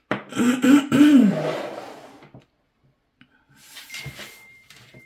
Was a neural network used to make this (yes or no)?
yes